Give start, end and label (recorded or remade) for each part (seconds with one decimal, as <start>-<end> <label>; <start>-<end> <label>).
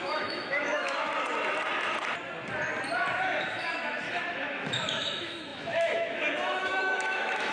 0.0-1.1 remade; 1.1-3.4 recorded; 3.4-7.5 remade